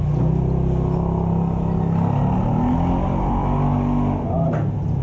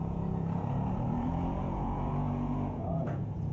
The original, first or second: first